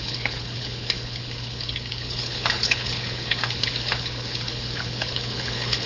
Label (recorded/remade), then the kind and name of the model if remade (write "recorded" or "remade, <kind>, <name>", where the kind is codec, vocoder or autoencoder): remade, codec, HILCodec